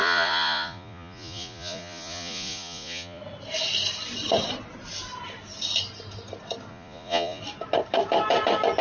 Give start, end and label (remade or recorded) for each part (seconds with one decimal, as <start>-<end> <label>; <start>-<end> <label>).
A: 0.0-3.2 remade; 3.2-6.7 recorded; 6.7-7.4 remade; 7.4-8.8 recorded